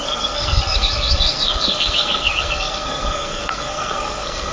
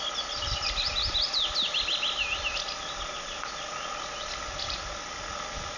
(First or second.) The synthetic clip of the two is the first